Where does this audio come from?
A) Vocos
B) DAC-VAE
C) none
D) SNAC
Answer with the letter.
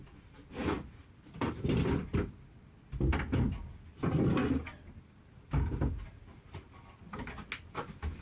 C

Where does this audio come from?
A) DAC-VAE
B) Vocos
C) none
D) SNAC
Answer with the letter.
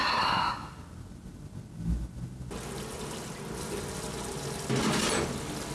C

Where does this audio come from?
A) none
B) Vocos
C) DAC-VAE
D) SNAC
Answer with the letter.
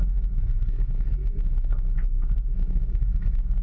D